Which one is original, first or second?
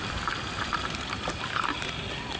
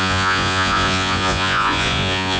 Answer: first